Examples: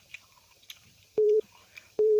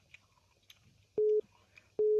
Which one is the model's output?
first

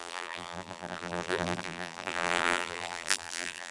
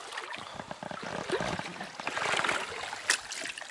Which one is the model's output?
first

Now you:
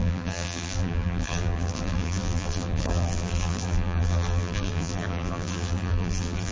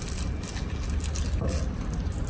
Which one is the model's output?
first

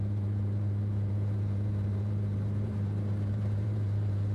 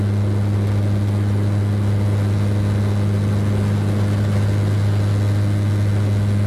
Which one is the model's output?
first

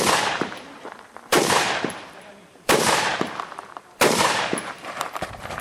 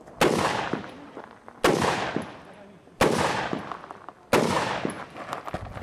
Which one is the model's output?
first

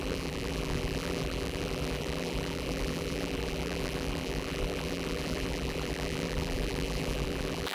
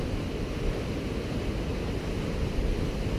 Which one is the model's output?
first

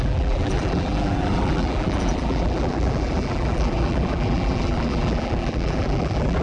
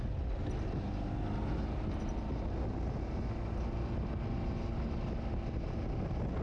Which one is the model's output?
first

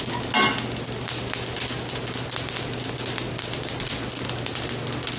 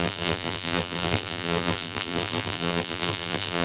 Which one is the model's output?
second